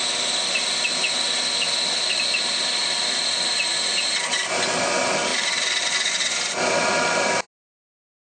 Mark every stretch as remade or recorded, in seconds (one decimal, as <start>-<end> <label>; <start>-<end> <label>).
0.0-8.2 recorded